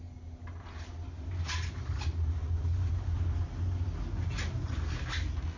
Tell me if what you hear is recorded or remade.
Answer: recorded